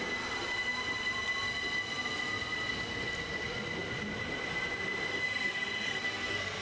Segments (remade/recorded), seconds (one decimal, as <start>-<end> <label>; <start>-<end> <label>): 0.0-5.1 recorded; 5.1-6.6 remade